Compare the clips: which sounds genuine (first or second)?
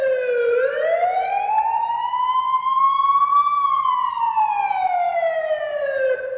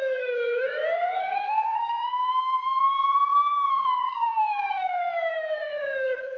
first